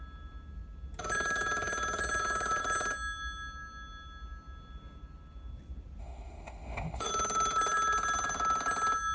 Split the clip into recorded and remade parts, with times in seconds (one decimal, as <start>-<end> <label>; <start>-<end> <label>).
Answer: 0.0-6.0 recorded; 6.0-7.1 remade; 7.1-9.1 recorded